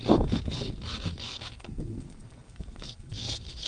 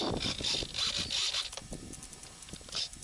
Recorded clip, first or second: second